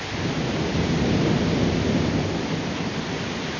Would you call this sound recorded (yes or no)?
yes